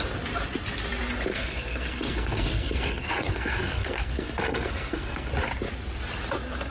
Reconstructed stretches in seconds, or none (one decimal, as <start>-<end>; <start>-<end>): 1.3-5.3